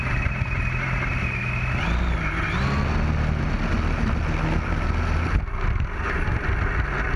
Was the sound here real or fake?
real